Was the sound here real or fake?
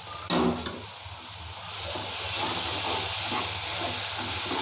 real